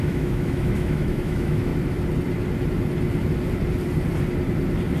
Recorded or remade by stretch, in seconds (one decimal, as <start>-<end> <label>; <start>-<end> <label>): 0.0-1.7 remade; 1.7-5.0 recorded